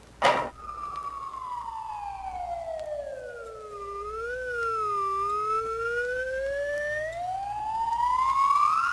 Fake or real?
real